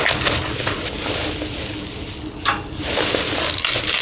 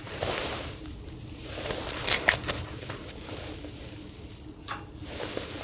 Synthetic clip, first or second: second